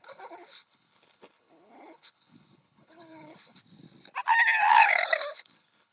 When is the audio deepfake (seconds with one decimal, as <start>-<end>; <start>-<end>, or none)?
0.0-3.6; 4.7-5.9